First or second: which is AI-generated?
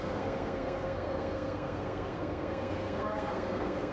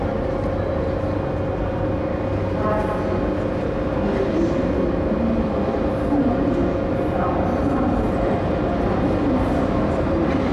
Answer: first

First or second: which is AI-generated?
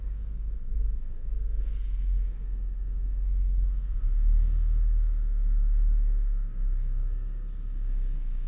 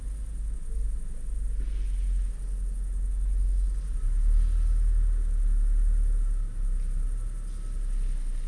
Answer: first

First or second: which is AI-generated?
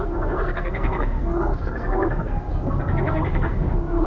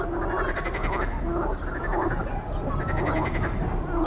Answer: first